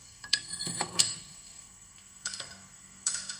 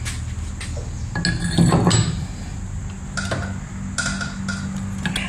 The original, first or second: second